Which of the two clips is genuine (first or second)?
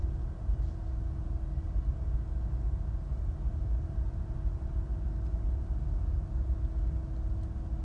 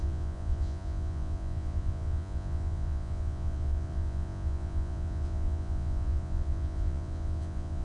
first